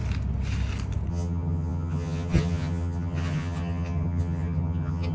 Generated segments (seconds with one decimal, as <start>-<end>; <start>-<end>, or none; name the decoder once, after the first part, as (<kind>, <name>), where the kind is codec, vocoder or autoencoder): 1.1-5.1 (vocoder, HiFi-GAN)